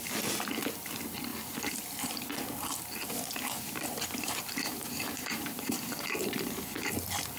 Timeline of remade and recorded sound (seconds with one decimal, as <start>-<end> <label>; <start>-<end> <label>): 0.0-3.9 recorded; 3.9-6.3 remade; 6.3-7.4 recorded